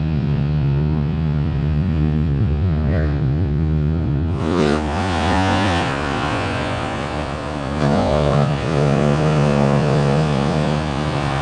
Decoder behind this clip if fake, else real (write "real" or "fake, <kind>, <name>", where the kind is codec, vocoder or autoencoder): fake, vocoder, Vocos